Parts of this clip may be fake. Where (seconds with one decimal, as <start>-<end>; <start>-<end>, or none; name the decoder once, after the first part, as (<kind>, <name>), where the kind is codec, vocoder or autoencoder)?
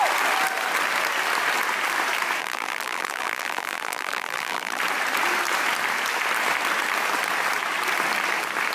2.4-4.8 (vocoder, BigVGAN v2)